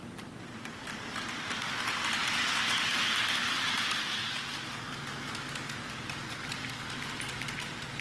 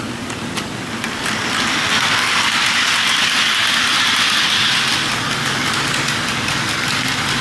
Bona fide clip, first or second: first